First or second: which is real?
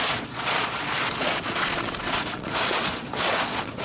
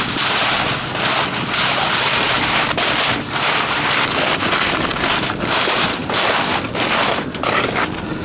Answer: second